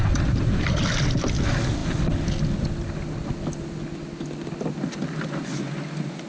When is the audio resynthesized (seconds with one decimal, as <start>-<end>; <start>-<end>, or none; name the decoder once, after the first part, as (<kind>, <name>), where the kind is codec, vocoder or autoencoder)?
none